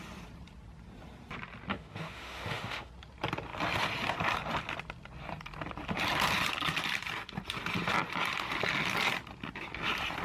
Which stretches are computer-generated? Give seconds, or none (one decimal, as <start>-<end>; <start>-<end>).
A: 1.7-2.9